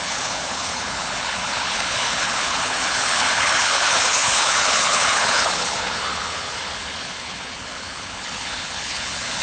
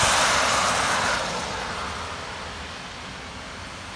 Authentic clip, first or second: second